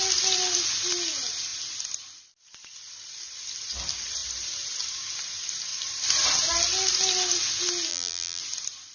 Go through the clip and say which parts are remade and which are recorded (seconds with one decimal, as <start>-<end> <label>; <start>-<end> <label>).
0.0-7.9 recorded; 7.9-8.4 remade; 8.4-8.9 recorded